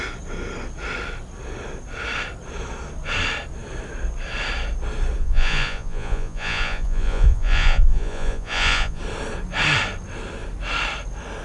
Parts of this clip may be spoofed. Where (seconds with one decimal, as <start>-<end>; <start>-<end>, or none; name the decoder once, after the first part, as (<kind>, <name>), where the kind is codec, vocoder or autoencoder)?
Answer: 5.2-9.0 (vocoder, Vocos)